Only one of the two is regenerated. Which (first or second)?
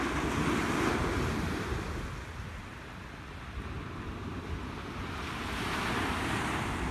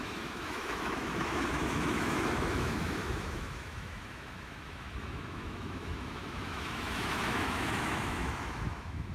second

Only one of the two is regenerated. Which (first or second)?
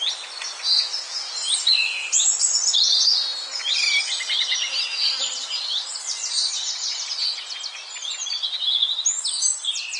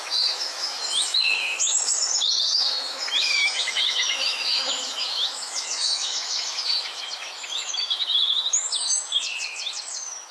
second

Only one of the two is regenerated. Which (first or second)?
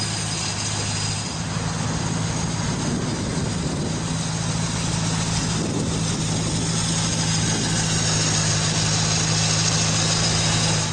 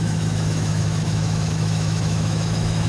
second